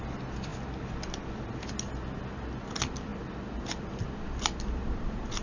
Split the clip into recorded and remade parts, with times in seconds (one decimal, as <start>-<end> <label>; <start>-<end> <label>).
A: 0.0-5.4 recorded